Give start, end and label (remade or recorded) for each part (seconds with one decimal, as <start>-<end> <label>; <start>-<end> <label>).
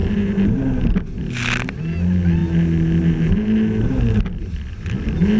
0.0-5.4 recorded